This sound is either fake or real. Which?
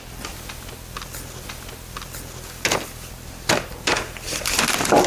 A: real